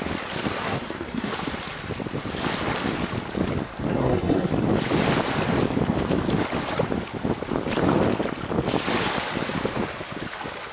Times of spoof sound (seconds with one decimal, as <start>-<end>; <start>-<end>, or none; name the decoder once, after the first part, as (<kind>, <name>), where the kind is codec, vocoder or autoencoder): 0.6-1.3 (codec, SNAC); 3.9-4.5